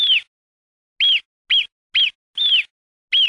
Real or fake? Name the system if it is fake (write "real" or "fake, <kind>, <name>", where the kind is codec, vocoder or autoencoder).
real